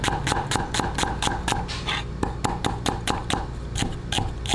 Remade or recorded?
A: recorded